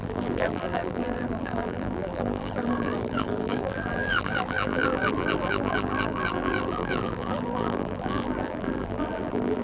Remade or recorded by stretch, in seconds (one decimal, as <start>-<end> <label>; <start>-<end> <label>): 0.0-9.6 remade